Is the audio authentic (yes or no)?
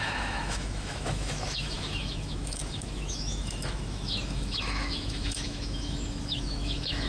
no